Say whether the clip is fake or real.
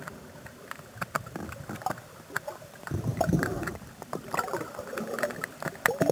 fake